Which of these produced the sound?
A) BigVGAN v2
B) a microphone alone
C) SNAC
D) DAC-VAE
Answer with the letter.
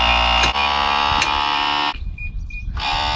A